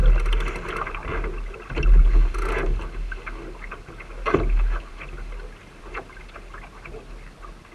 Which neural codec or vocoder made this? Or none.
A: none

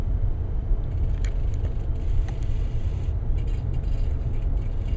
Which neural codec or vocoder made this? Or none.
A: none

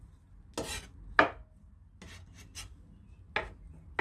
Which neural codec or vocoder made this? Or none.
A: none